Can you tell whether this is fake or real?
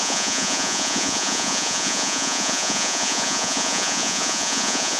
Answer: fake